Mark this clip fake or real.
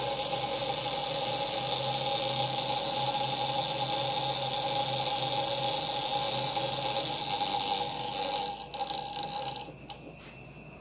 real